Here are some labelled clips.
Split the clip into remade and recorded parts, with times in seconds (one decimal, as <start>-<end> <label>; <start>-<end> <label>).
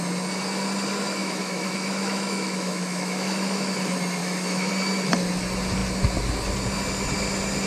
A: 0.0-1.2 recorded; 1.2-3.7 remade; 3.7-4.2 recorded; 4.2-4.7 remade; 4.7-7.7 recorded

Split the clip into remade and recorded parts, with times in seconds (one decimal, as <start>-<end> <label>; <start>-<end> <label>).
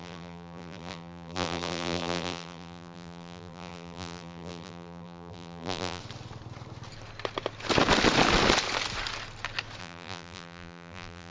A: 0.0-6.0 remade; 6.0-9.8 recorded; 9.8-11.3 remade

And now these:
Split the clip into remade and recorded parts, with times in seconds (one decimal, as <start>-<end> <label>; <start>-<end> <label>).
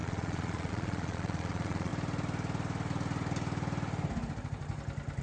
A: 0.0-1.9 remade; 1.9-5.2 recorded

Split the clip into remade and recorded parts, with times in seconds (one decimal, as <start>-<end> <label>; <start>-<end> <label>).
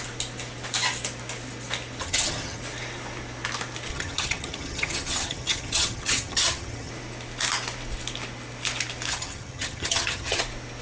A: 0.0-2.0 recorded; 2.0-2.6 remade; 2.6-3.9 recorded; 3.9-6.9 remade; 6.9-9.1 recorded; 9.1-10.4 remade; 10.4-10.8 recorded